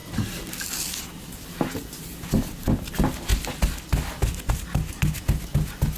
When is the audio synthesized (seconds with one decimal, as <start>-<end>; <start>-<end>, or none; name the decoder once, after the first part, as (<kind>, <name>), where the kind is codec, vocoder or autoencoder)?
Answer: none